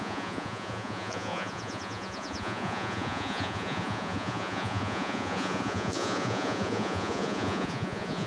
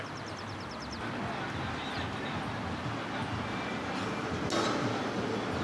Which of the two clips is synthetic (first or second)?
first